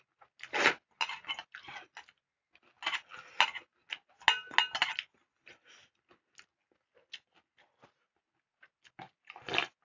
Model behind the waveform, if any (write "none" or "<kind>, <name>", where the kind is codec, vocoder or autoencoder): none